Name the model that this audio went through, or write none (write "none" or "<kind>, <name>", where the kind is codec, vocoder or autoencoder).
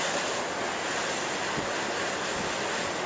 none